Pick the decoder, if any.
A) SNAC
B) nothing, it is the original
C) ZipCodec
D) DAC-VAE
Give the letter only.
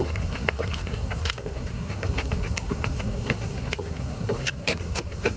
A